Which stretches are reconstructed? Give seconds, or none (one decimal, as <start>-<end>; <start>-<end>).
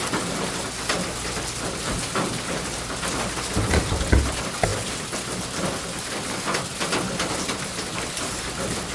none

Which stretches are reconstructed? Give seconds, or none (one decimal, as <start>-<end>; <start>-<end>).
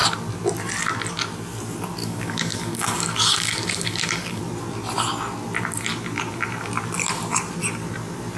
2.0-4.4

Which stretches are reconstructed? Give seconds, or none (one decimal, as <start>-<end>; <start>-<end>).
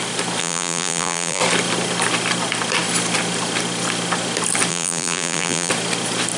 0.4-1.4; 4.7-5.7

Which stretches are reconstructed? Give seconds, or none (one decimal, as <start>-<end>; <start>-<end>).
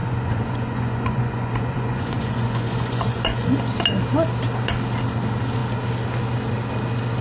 0.0-3.5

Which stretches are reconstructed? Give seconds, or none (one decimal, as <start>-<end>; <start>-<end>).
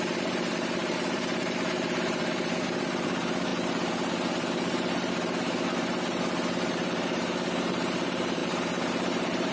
0.0-9.5